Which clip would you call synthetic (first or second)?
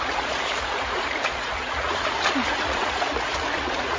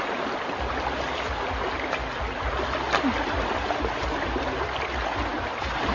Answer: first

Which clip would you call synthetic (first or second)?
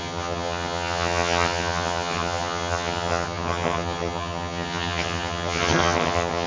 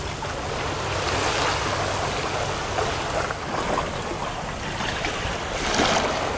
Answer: first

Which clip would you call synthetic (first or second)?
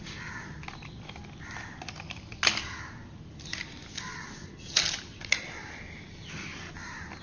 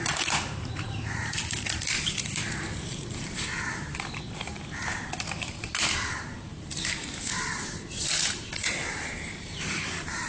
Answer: second